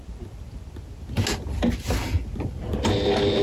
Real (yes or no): yes